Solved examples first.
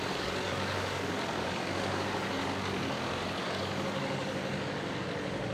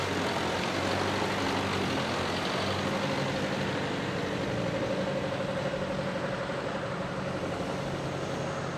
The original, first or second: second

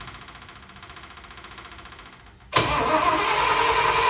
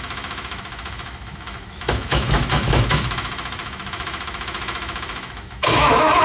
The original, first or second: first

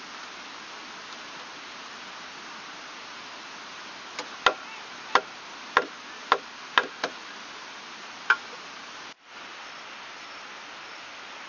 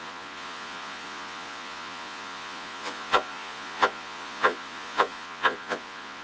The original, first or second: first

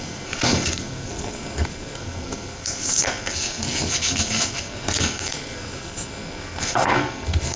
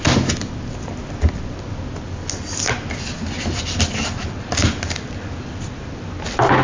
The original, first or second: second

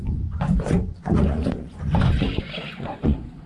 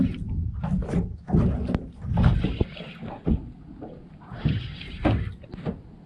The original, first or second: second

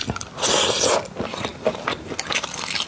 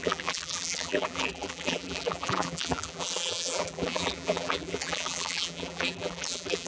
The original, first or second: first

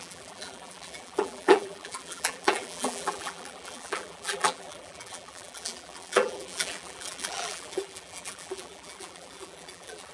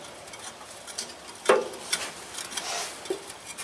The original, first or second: second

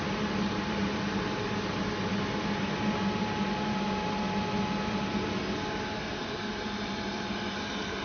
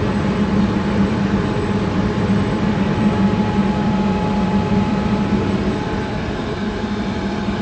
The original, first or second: first